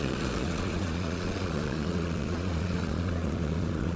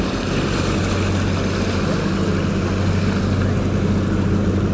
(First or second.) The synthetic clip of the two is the first